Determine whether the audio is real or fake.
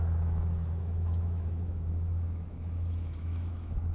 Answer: fake